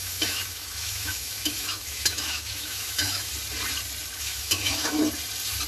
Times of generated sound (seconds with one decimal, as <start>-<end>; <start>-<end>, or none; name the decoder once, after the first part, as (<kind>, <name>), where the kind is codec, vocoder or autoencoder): 0.0-3.3 (autoencoder, DAC-VAE); 4.2-5.0